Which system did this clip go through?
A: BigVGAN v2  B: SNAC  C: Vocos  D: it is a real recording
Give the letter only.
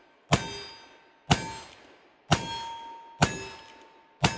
D